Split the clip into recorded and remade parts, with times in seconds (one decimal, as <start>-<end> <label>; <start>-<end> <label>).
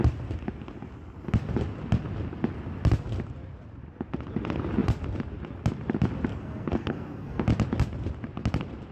0.0-6.3 recorded; 6.3-7.4 remade; 7.4-8.9 recorded